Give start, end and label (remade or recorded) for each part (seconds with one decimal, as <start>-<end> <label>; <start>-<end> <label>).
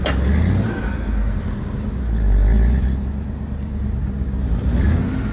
0.0-0.9 recorded; 0.9-1.4 remade; 1.4-5.3 recorded